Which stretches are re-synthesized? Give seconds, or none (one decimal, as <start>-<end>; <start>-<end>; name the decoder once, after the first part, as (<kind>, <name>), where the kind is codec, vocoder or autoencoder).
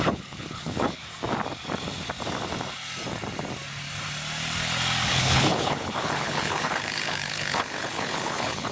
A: 0.0-1.0 (codec, HILCodec); 5.1-8.7